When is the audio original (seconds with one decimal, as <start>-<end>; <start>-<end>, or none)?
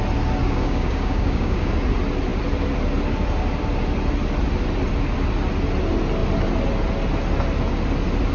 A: 0.0-0.4; 1.7-8.3